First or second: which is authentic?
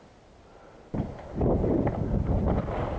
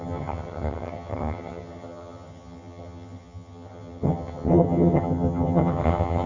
first